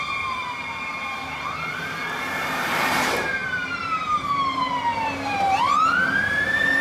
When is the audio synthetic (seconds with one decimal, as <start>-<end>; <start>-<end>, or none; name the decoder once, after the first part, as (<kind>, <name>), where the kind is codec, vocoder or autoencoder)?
0.0-0.4 (vocoder, BigVGAN v2); 0.9-6.8